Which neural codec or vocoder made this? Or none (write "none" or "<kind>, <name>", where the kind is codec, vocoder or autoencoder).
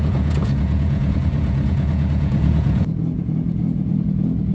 vocoder, Vocos